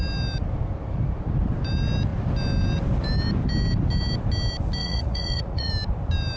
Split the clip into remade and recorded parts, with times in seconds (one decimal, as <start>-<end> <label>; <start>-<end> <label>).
0.0-4.8 recorded; 4.8-5.7 remade; 5.7-6.4 recorded